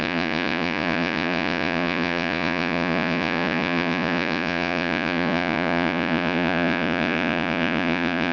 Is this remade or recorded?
remade